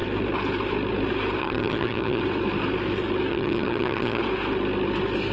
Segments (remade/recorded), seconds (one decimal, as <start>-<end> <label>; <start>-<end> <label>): 0.0-1.4 recorded; 1.4-2.2 remade; 2.2-3.3 recorded; 3.3-4.2 remade; 4.2-5.3 recorded